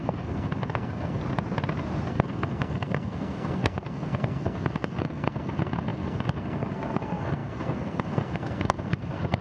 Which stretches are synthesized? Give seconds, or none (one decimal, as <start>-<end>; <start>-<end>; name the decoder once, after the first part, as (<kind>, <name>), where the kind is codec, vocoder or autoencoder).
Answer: 0.0-1.2 (codec, SNAC); 2.1-9.4